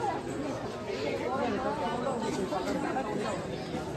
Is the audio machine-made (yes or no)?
no